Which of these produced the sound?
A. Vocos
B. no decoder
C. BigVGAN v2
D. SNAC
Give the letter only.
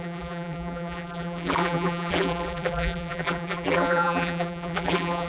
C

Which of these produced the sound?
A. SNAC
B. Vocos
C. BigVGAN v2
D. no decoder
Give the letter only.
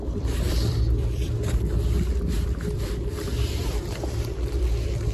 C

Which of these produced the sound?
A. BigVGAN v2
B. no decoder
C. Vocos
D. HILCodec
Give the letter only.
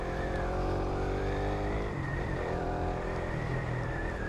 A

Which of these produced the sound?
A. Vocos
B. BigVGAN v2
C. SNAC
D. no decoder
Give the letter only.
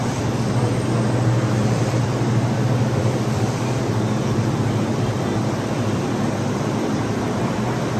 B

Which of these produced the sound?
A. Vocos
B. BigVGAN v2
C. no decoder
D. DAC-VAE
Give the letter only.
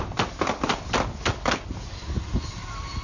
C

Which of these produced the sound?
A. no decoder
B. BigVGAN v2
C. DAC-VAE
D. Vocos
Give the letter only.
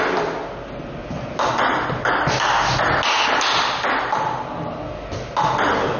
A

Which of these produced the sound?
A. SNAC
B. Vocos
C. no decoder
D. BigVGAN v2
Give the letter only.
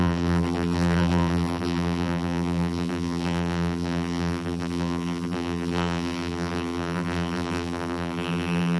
D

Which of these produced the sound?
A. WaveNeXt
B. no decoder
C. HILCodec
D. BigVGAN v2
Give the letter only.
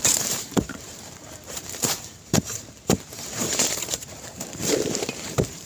D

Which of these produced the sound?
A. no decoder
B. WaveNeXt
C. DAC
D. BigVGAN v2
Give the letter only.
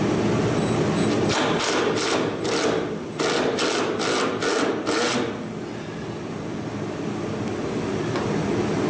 A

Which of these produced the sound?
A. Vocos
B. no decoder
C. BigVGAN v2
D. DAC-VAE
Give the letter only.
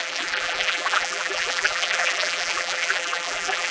C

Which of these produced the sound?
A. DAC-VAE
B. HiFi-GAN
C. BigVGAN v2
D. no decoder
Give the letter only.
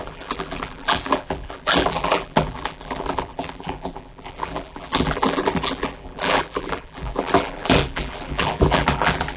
C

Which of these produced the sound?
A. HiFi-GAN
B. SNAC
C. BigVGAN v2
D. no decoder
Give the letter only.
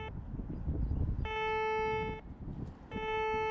D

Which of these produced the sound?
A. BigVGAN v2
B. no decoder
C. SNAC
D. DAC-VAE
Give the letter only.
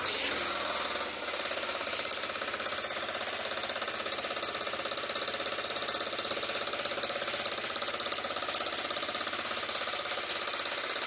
B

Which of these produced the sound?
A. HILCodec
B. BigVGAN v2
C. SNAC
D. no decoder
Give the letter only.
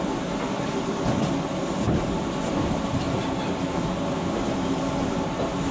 B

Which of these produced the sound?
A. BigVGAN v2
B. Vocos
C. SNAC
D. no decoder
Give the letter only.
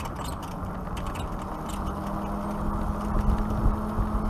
D